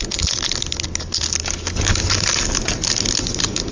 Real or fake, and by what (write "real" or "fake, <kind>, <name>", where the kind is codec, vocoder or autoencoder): real